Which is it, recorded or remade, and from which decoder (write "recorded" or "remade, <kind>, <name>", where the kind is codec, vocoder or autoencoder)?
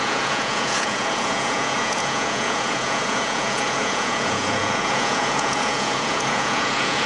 remade, vocoder, Vocos